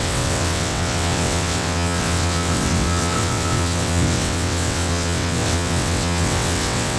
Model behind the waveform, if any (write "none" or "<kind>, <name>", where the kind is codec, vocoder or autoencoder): vocoder, WaveNeXt